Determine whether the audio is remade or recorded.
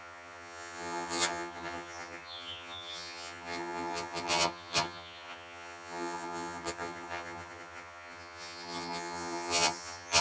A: remade